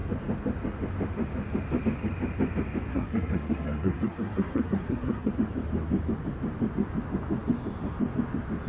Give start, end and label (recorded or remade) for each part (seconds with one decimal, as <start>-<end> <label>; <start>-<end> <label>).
0.0-2.9 recorded; 2.9-5.3 remade; 5.3-8.7 recorded